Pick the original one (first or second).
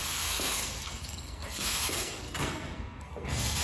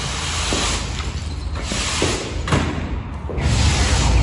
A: second